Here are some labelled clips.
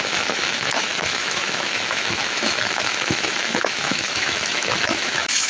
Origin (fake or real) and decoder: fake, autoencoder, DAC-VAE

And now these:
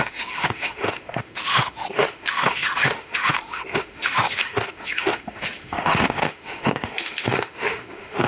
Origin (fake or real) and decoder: fake, autoencoder, DAC-VAE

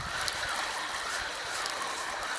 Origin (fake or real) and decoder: real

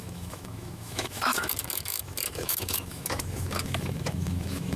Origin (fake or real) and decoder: fake, autoencoder, DAC-VAE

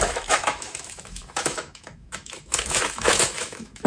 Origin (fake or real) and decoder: fake, autoencoder, DAC-VAE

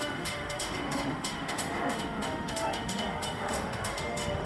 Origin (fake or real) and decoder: fake, autoencoder, DAC-VAE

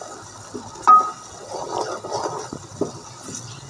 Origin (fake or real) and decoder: real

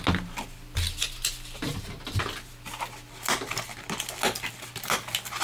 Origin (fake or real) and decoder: real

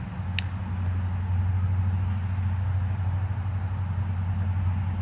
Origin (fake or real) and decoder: real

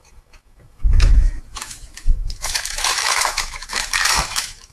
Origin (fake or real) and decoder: fake, autoencoder, DAC-VAE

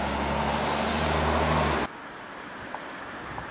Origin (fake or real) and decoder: real